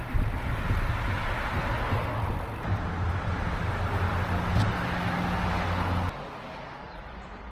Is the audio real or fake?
real